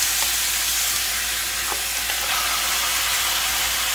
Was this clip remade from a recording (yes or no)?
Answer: no